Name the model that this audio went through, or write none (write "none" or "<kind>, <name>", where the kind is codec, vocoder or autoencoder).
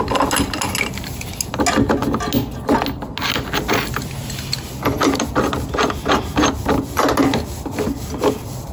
none